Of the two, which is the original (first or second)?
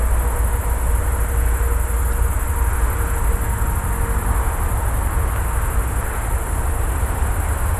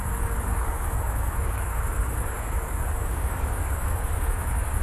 first